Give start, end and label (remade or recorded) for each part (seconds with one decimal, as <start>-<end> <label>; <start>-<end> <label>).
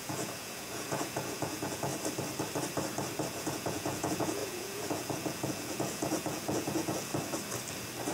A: 0.0-1.9 remade; 1.9-3.3 recorded; 3.3-7.1 remade; 7.1-8.1 recorded